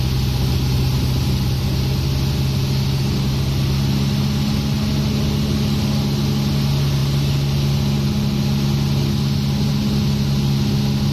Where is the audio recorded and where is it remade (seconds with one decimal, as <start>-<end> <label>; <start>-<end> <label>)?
0.0-11.1 recorded